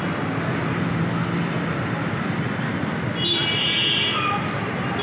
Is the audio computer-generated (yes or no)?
no